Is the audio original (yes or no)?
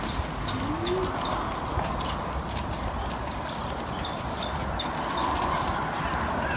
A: yes